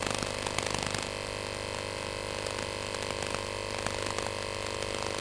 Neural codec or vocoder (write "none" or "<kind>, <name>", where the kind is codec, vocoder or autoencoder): none